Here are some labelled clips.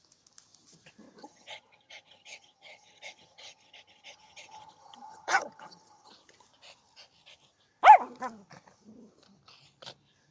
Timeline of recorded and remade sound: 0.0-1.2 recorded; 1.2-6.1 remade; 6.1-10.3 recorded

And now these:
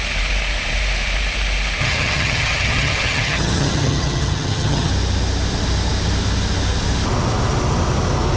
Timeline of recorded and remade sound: 0.0-1.8 recorded; 1.8-4.9 remade; 4.9-8.4 recorded

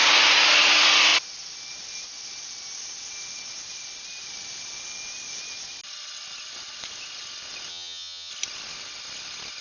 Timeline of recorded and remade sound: 0.0-7.7 recorded; 7.7-8.3 remade; 8.3-9.6 recorded

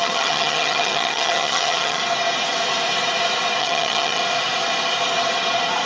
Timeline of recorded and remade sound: 0.0-2.0 remade; 2.0-3.6 recorded; 3.6-4.2 remade; 4.2-5.9 recorded

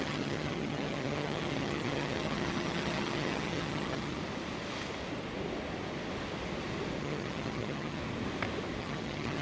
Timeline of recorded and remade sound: 0.0-4.2 remade; 4.2-7.0 recorded; 7.0-8.0 remade; 8.0-8.8 recorded; 8.8-9.4 remade

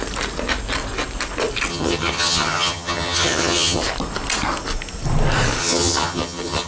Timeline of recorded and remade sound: 0.0-1.7 recorded; 1.7-3.8 remade; 3.8-5.6 recorded; 5.6-6.7 remade